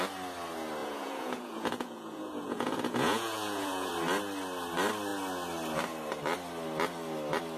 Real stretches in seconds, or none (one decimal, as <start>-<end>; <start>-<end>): 0.0-0.8; 3.9-7.6